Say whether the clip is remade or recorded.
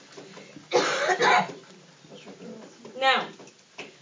recorded